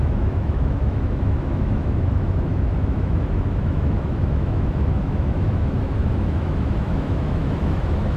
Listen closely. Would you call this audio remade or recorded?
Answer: remade